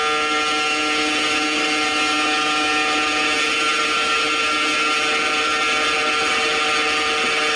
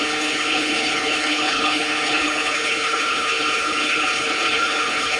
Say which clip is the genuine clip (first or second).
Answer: first